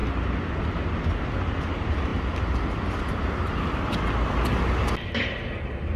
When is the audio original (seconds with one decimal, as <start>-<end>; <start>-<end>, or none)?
0.0-6.0